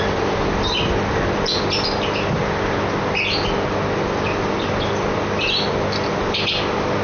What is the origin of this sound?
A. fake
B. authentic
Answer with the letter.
B